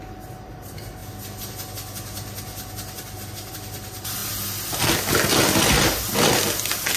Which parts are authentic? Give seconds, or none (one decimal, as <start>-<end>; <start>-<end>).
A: 0.0-7.0